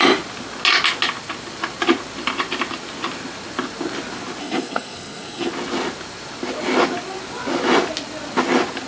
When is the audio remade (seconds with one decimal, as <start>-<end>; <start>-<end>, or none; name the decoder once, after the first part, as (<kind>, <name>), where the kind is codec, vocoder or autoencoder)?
4.4-5.5 (codec, SNAC)